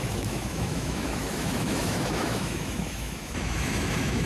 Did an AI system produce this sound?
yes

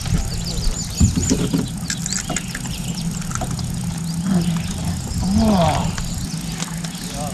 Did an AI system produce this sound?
no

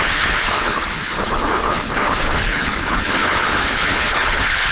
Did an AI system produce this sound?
yes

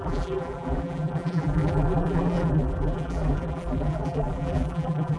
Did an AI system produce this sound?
yes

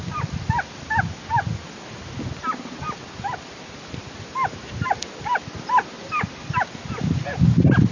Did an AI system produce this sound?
no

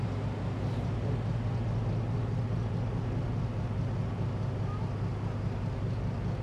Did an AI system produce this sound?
no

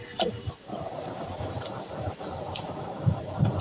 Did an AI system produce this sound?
yes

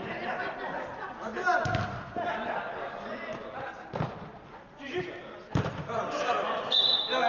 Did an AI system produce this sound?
no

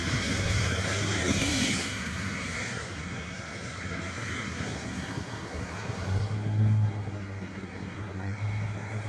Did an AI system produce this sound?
yes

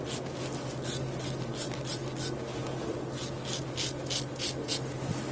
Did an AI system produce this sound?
no